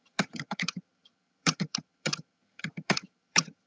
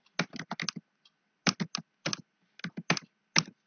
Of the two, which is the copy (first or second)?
first